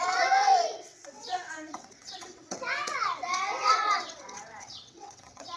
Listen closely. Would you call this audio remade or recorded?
remade